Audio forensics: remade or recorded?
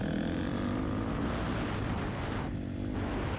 recorded